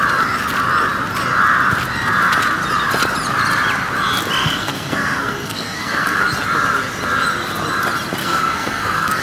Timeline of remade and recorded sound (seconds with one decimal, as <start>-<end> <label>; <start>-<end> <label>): 0.0-4.4 recorded; 4.4-6.3 remade; 6.3-8.2 recorded; 8.2-9.2 remade